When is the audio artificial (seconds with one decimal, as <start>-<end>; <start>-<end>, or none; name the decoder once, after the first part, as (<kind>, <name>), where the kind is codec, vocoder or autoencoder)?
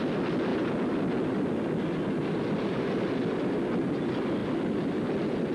none